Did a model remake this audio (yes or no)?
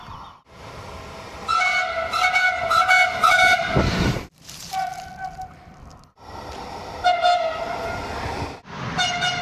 no